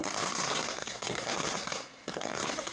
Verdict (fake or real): fake